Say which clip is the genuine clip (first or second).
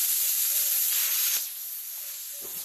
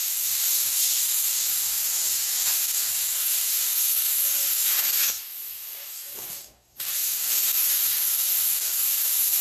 first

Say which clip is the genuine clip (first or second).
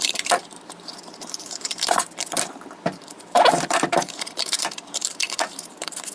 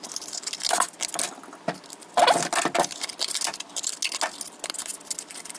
second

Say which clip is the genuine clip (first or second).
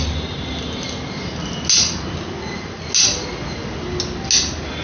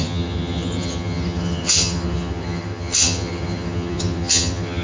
first